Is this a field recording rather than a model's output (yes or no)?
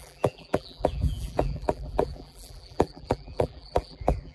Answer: no